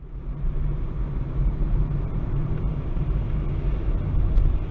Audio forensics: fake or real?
fake